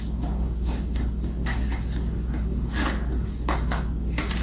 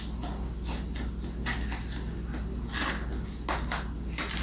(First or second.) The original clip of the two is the second